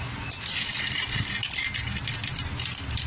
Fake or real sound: real